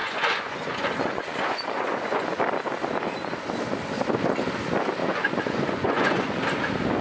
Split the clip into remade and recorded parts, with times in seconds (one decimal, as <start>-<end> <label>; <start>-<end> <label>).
0.0-2.4 remade; 2.4-5.0 recorded; 5.0-6.3 remade; 6.3-7.0 recorded